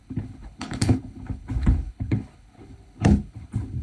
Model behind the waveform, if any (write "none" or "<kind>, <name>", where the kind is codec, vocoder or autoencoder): codec, HILCodec